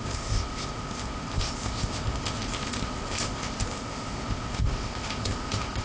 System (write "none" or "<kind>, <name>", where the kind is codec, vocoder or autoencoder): codec, ZipCodec